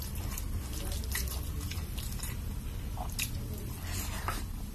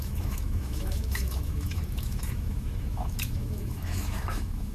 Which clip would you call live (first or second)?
first